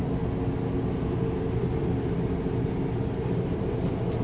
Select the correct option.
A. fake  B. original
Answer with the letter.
B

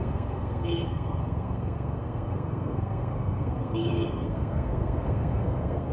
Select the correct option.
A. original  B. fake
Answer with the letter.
B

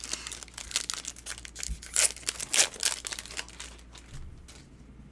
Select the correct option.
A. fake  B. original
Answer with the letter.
B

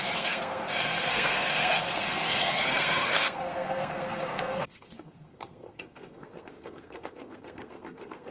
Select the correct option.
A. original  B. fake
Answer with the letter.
B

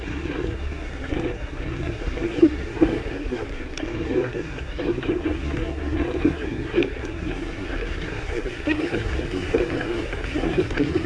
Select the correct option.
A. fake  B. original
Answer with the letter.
A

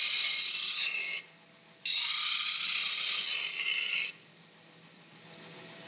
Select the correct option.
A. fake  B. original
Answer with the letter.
B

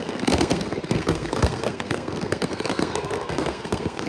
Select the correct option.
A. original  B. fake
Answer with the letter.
B